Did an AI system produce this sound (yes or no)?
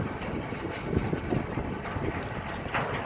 no